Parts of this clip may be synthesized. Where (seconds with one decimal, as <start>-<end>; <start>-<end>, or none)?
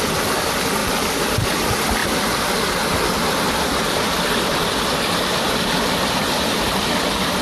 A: none